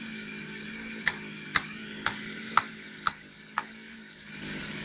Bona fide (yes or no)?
no